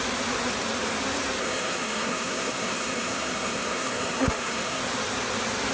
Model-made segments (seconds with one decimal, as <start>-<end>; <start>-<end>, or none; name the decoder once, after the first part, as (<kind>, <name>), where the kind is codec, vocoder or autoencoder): 1.4-4.8 (codec, SNAC)